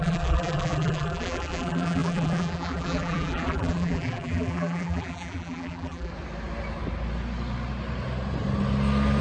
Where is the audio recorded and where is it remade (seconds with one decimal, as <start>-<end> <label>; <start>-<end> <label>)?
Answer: 0.0-6.1 remade; 6.1-9.2 recorded